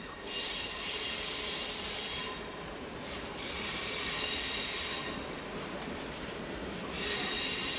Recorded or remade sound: recorded